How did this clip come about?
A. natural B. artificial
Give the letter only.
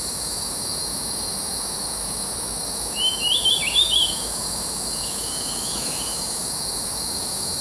B